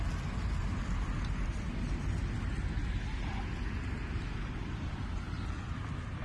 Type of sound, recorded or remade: recorded